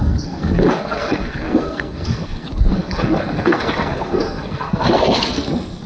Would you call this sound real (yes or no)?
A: no